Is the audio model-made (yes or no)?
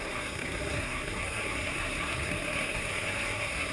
yes